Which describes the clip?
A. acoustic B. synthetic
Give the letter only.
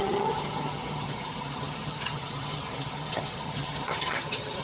B